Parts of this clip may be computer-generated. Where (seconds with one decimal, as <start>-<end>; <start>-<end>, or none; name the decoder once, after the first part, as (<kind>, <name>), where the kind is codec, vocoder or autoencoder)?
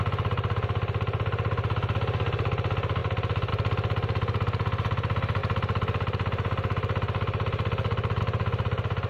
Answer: none